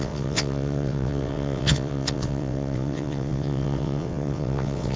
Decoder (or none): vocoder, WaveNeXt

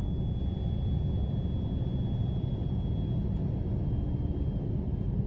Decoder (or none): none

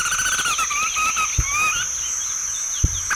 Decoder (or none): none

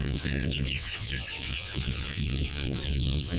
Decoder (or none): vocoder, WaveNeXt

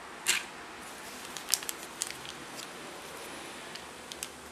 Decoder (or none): none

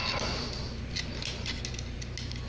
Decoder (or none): none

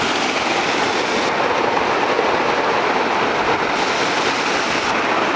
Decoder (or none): none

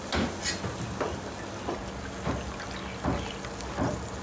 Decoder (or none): none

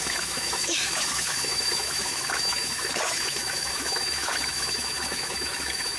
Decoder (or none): autoencoder, DAC-VAE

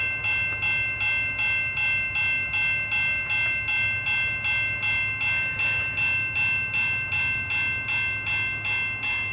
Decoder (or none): none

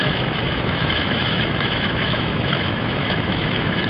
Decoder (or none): autoencoder, DAC-VAE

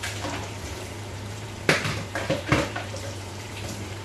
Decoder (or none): vocoder, BigVGAN v2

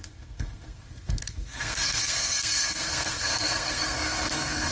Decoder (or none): codec, SNAC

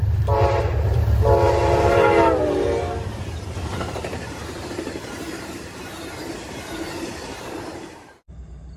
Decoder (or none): vocoder, BigVGAN v2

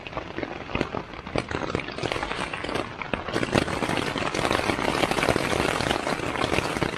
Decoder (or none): none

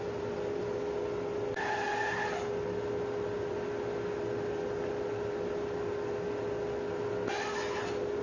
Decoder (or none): none